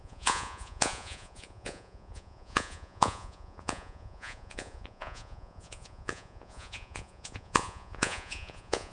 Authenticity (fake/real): fake